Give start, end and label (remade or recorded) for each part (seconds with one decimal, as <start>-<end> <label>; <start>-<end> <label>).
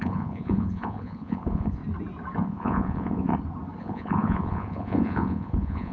0.0-1.8 remade; 1.8-2.4 recorded; 2.4-3.3 remade; 3.3-3.8 recorded; 3.8-5.9 remade